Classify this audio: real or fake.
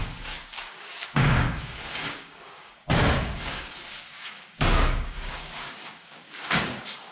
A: fake